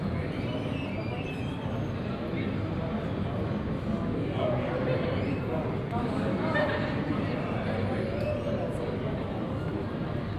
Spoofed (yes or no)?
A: no